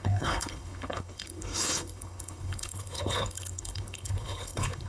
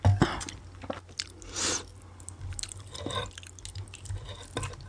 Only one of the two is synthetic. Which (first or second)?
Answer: first